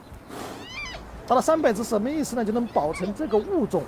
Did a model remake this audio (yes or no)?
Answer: no